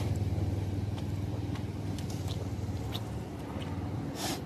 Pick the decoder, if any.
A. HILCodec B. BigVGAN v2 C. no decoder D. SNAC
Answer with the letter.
C